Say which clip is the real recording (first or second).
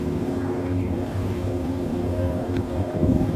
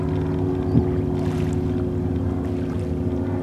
second